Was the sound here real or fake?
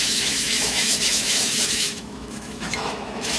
fake